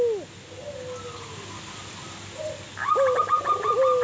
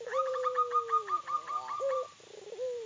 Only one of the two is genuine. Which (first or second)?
first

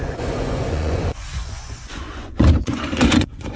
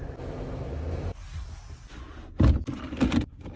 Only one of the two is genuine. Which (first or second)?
second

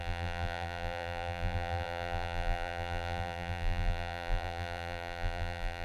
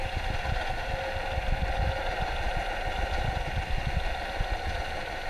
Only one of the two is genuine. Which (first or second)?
second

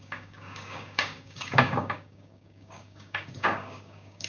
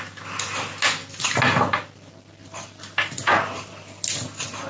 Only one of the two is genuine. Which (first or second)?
second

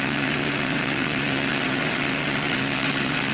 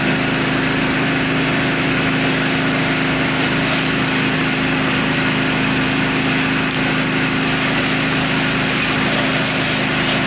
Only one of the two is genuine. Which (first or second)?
second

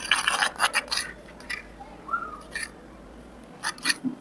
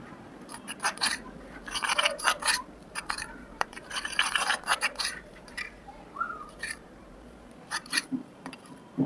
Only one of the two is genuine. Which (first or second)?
first